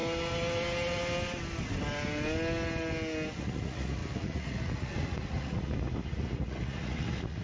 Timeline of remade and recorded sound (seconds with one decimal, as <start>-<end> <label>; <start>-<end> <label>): 0.0-3.4 recorded; 3.4-7.4 remade